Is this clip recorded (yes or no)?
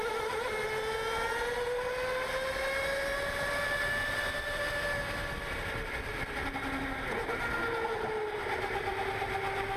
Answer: yes